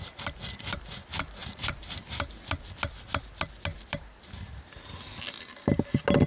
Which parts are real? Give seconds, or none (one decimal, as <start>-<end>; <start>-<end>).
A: 0.0-1.4; 2.7-3.7; 4.4-6.3